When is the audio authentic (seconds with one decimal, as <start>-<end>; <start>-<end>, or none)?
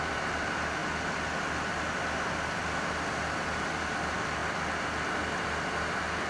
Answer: 0.8-3.0; 4.4-6.3